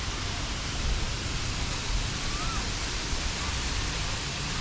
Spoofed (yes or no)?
no